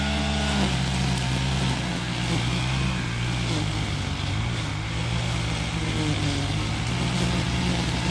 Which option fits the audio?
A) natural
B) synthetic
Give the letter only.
A